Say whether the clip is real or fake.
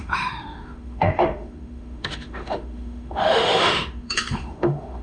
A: fake